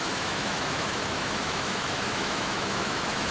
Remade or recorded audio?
remade